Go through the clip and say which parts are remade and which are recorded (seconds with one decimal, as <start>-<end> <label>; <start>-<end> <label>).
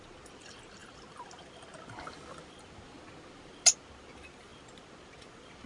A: 0.0-5.7 recorded